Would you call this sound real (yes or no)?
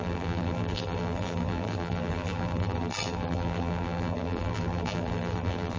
no